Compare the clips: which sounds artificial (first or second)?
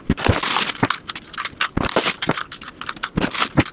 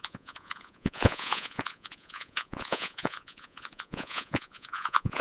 second